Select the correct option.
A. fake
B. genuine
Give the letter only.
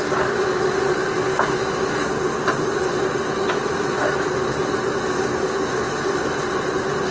B